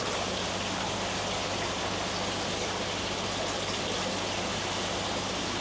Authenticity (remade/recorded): recorded